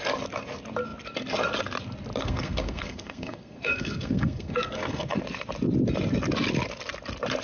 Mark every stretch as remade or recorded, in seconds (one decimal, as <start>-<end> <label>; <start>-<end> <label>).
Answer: 0.0-2.2 recorded; 2.2-5.2 remade; 5.2-7.4 recorded